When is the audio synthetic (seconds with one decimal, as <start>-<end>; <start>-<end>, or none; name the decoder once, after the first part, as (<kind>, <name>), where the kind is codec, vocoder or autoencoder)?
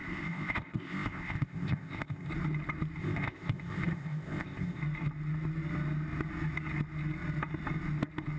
0.0-2.3 (codec, ZipCodec); 3.0-4.8